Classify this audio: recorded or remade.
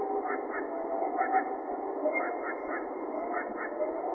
recorded